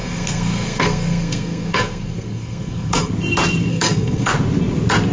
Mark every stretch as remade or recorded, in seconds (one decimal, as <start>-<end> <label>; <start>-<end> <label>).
0.0-3.1 remade; 3.1-3.7 recorded; 3.7-4.3 remade; 4.3-5.1 recorded